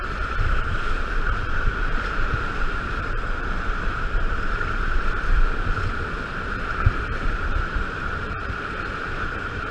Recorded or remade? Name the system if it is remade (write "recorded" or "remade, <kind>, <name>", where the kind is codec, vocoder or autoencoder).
remade, vocoder, BigVGAN v2